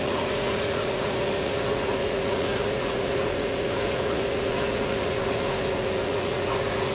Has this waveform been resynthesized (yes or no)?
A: yes